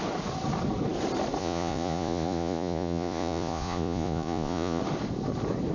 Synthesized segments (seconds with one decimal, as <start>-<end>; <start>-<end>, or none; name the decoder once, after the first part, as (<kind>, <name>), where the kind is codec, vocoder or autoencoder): 1.4-4.8 (vocoder, Vocos)

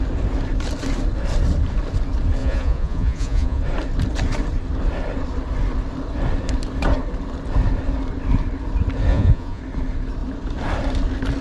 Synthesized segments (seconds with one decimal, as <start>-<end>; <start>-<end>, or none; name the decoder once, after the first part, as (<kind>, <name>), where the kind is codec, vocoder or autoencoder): 2.4-3.6 (vocoder, Vocos); 9.1-9.6

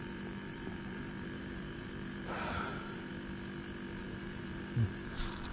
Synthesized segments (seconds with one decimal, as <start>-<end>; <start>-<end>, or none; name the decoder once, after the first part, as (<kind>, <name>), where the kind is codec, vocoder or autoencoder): 0.0-3.1 (vocoder, BigVGAN v2); 4.0-5.5

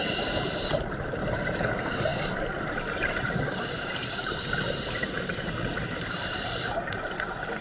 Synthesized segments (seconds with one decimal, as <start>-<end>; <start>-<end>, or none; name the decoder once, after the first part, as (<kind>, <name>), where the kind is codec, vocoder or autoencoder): 0.0-2.1 (vocoder, BigVGAN v2); 2.7-7.6

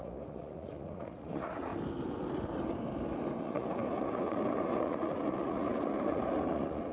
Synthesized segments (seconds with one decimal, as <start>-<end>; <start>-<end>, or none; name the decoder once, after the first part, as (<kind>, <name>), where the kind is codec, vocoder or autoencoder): 0.0-1.7 (vocoder, Vocos); 3.4-6.9

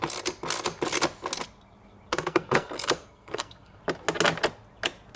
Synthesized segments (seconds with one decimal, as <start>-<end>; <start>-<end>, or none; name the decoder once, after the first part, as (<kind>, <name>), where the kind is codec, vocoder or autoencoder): 2.1-3.8 (codec, SNAC)

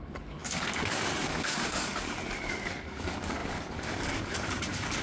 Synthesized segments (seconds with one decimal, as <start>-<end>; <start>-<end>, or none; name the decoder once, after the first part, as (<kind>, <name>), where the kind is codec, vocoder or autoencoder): 0.0-5.0 (codec, DAC)